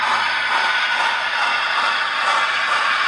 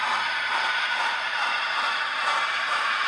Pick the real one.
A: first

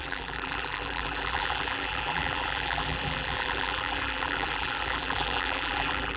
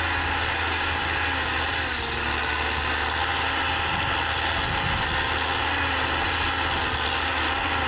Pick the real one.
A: second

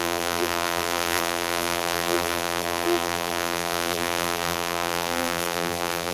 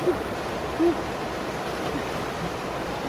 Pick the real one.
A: second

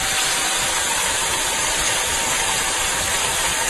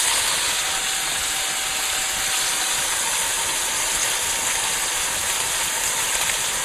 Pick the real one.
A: second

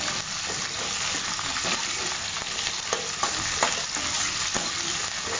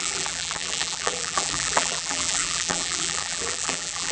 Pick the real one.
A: first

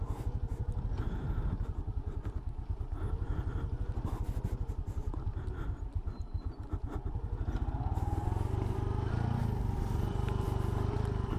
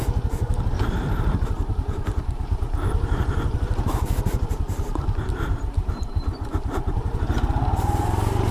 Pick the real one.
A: first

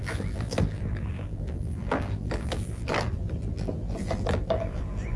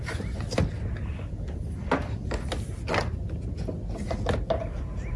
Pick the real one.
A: second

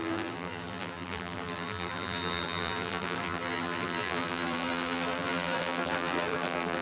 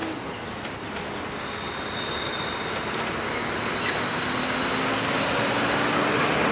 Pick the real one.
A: second